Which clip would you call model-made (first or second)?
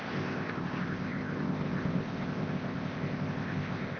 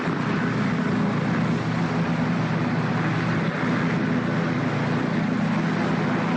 first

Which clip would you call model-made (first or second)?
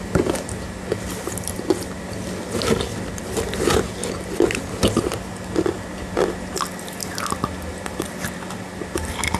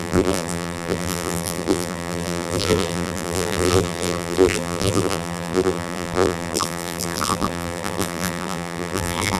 second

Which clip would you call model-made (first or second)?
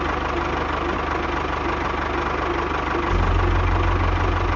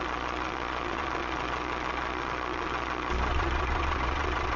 second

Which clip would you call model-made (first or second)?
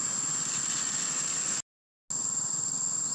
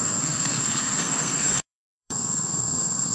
second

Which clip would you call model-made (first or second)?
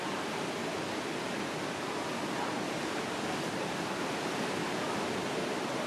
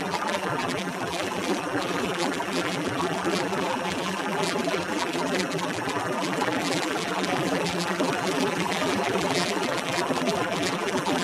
second